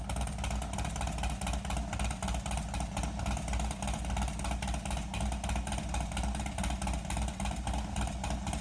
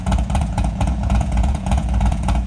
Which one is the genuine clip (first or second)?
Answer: first